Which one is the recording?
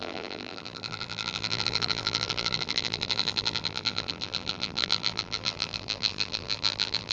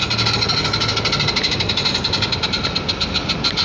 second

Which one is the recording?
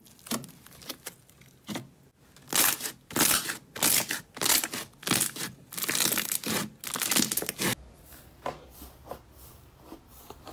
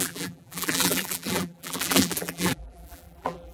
first